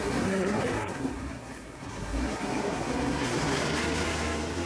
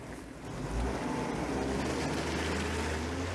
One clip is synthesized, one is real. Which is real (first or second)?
second